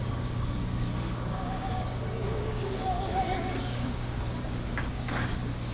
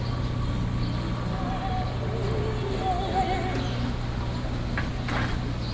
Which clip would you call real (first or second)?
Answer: second